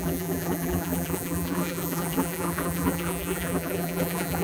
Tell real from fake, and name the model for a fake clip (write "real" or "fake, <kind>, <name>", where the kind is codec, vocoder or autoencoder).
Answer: fake, vocoder, BigVGAN v2